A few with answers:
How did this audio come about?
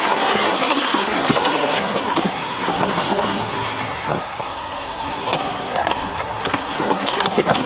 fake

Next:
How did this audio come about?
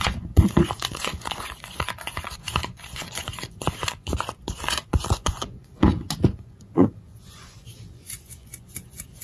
fake